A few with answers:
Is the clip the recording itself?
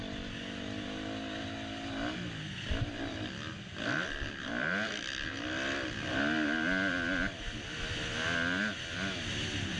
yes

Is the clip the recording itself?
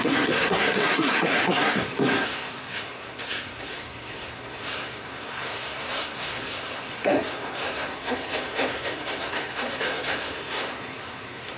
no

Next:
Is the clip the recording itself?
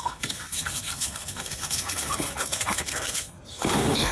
no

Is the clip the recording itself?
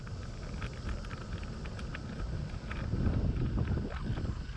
yes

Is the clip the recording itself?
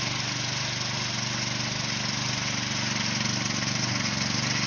yes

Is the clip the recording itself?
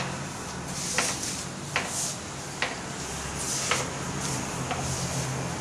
yes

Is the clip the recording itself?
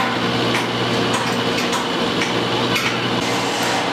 yes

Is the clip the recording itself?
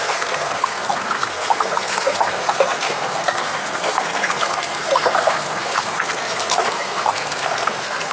no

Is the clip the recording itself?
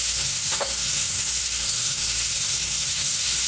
no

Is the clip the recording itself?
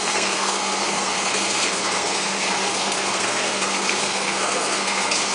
no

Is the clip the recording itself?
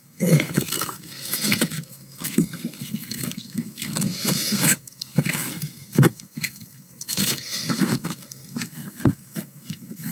no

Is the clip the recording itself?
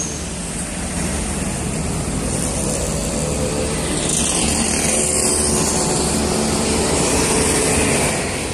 yes